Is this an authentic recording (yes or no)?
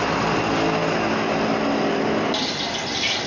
yes